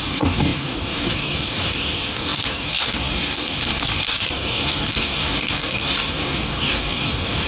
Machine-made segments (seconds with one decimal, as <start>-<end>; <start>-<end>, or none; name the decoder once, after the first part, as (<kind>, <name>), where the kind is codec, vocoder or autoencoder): 0.0-7.5 (codec, DAC)